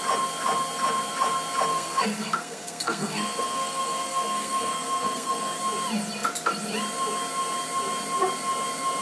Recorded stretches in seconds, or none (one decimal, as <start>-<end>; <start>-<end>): 0.0-1.7; 5.6-9.0